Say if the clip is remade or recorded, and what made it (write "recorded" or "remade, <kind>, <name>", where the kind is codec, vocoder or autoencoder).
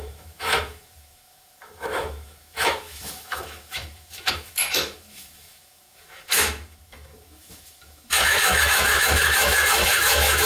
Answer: remade, autoencoder, DAC-VAE